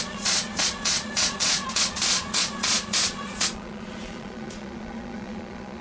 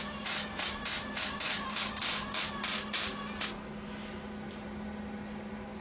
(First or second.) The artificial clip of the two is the first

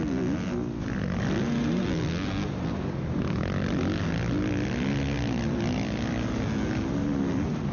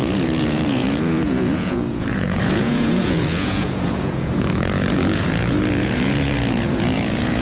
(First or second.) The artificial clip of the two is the second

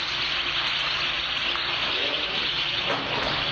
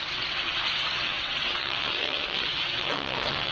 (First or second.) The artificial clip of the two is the second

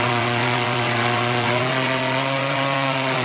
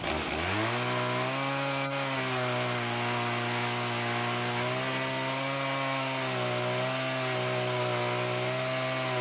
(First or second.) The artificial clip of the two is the first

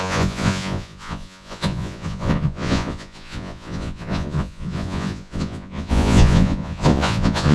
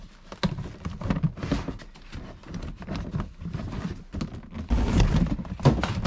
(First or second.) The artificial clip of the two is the first